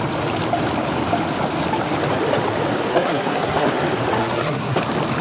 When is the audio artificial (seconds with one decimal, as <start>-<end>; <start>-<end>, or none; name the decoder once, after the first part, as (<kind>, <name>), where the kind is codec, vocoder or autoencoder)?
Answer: 2.9-3.7 (codec, SNAC); 4.2-4.8